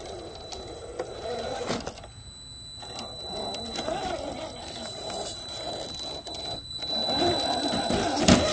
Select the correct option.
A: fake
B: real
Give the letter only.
B